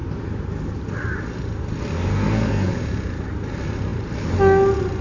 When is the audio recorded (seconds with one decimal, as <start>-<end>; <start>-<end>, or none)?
0.0-2.1; 2.7-5.0